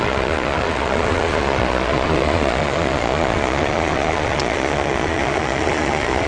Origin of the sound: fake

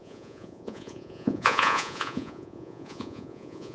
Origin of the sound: fake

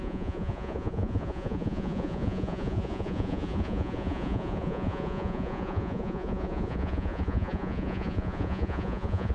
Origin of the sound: fake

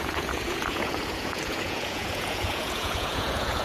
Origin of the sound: fake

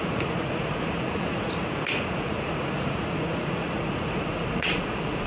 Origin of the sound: fake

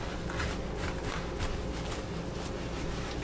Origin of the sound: real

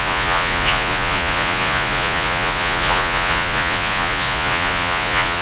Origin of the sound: fake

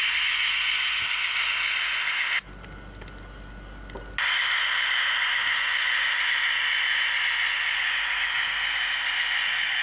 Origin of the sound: real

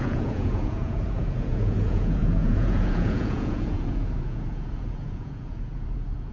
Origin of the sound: fake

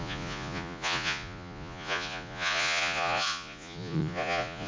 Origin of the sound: fake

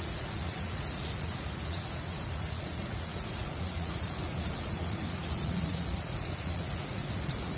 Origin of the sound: fake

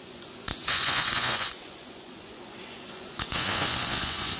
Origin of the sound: fake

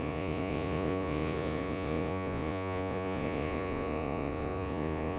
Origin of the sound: fake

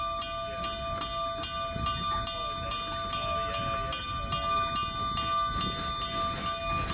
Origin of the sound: real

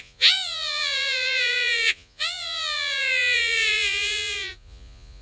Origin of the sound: fake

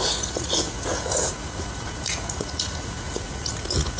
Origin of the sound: fake